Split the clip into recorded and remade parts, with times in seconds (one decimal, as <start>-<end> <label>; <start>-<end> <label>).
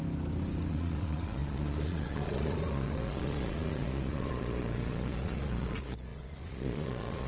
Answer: 0.0-0.7 recorded; 0.7-7.3 remade